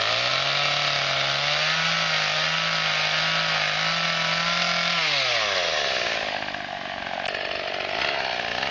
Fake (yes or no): no